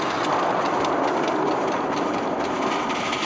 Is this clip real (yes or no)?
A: yes